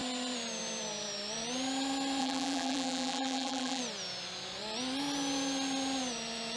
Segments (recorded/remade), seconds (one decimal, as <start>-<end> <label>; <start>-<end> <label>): 0.0-2.2 recorded; 2.2-3.8 remade; 3.8-6.6 recorded